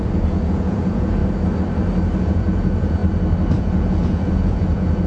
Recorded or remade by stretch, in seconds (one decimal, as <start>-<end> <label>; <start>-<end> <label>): 0.0-1.2 remade; 1.2-2.2 recorded; 2.2-3.0 remade; 3.0-3.6 recorded; 3.6-5.1 remade